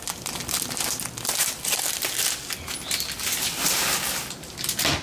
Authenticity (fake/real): real